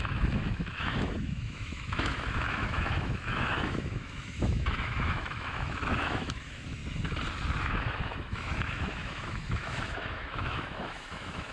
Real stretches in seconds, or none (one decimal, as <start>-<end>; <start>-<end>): 6.8-7.6